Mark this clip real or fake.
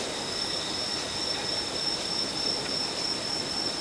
real